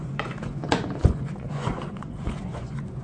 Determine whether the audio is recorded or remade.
remade